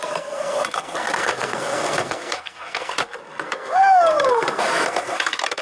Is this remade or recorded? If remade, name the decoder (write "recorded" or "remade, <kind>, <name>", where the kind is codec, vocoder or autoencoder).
remade, codec, SNAC